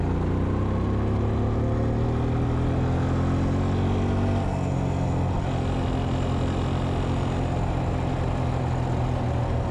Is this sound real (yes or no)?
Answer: yes